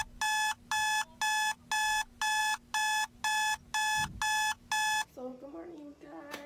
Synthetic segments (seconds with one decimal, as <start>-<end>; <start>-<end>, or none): none